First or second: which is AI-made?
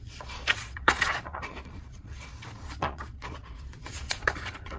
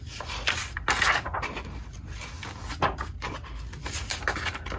first